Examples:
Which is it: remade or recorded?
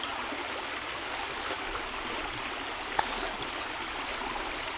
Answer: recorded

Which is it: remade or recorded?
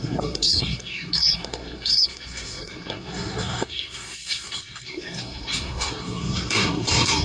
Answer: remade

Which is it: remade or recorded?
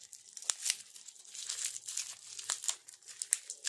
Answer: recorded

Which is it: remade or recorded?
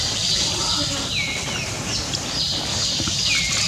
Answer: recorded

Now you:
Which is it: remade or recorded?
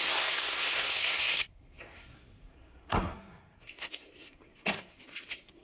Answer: remade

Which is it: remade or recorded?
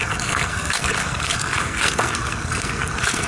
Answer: remade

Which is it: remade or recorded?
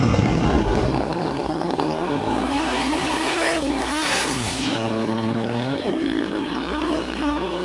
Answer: remade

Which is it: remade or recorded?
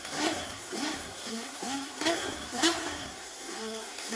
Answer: remade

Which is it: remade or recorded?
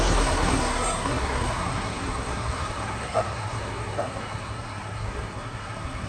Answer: remade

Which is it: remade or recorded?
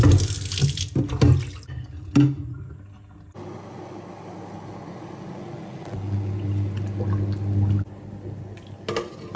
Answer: recorded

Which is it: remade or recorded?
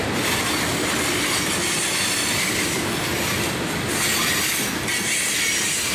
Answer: recorded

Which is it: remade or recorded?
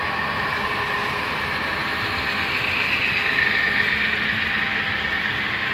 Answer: recorded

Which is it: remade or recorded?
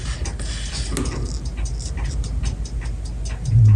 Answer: recorded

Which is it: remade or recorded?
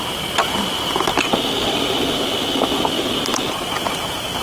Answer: recorded